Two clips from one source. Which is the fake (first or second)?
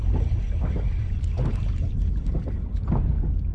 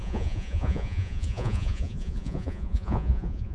second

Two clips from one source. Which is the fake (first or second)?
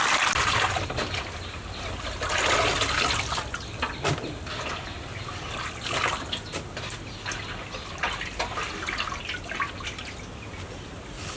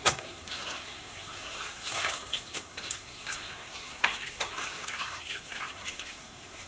second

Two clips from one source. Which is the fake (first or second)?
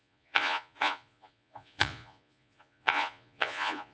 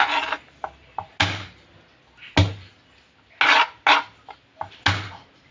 first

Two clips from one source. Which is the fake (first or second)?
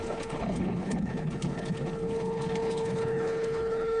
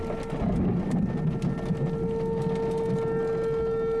first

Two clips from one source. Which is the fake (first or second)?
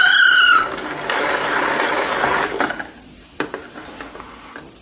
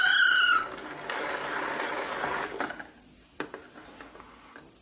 first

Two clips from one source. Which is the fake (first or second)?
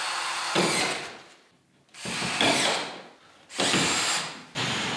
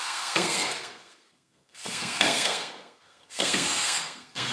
second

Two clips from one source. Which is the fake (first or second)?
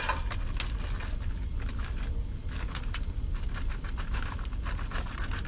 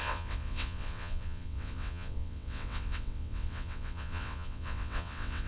second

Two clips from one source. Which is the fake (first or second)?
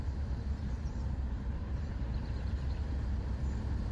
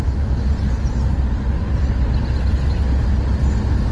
first